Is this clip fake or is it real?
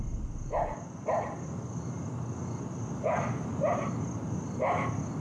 real